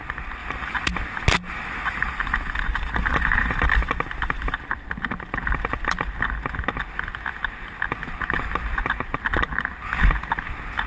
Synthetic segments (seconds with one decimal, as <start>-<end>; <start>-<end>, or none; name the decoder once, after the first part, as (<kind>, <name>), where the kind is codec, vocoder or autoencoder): none